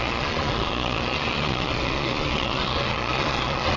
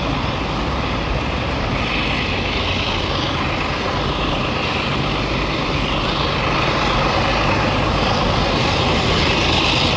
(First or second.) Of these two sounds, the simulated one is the first